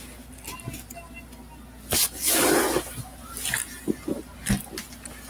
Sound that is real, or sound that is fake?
real